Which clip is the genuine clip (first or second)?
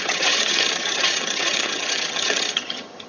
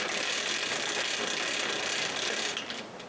second